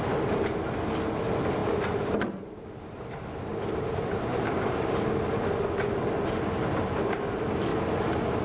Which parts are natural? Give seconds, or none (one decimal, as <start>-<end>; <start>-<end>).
0.0-1.6; 2.8-3.5; 5.0-7.7